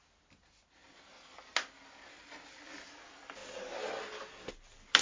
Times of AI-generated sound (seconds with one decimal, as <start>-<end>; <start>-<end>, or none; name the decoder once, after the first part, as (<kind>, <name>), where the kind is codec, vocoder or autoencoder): none